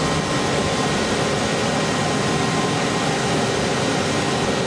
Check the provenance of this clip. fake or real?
real